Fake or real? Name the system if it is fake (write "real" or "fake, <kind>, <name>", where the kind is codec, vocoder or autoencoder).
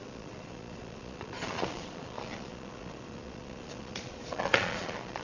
fake, vocoder, Vocos